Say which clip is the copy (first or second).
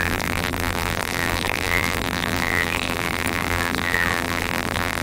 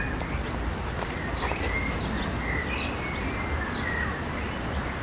first